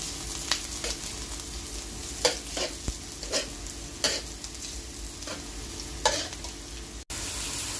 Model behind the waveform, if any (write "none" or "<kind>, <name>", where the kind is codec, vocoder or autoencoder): none